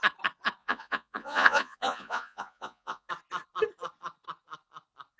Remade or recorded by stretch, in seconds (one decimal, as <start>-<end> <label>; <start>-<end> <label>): 0.0-0.6 recorded; 0.6-3.1 remade; 3.1-5.2 recorded